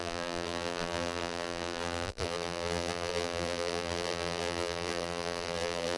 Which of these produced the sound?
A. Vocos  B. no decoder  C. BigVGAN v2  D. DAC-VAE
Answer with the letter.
C